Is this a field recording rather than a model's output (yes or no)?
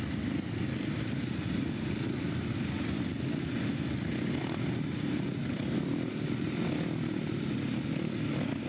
yes